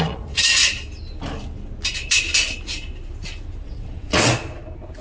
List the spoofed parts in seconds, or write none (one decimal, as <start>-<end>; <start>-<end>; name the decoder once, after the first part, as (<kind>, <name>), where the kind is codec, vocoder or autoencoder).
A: 0.0-0.7 (vocoder, WaveNeXt); 3.6-4.3